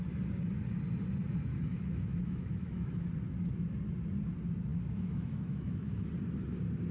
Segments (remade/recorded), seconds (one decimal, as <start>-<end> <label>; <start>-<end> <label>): 0.0-1.5 recorded; 1.5-3.1 remade; 3.1-4.7 recorded; 4.7-6.1 remade; 6.1-6.9 recorded